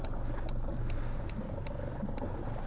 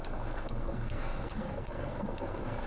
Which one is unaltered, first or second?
first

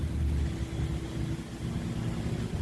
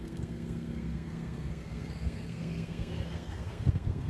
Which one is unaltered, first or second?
first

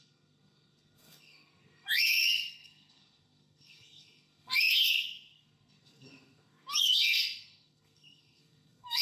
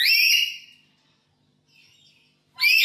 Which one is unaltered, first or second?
second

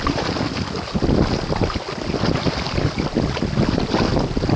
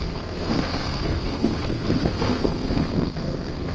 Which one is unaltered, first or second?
first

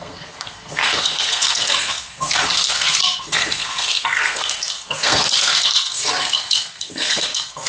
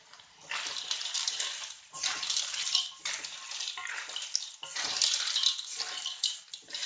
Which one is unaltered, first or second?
second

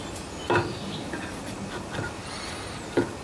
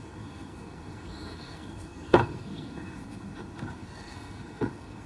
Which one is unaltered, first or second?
first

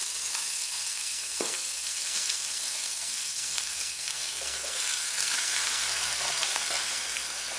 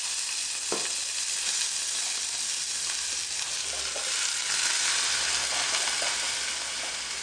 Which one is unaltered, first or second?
second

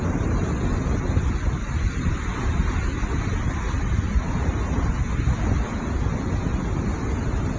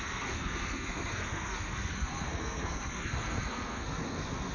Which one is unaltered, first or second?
first